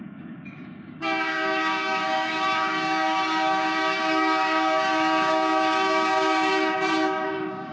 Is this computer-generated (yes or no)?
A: yes